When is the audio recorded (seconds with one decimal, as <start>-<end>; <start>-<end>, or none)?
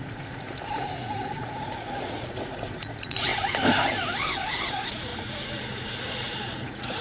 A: 3.3-4.5; 5.1-6.1